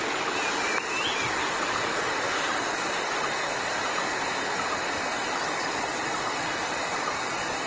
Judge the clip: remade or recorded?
recorded